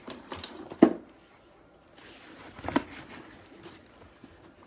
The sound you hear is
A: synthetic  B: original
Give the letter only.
B